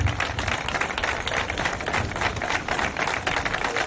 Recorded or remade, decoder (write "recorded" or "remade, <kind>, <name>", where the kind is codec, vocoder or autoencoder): recorded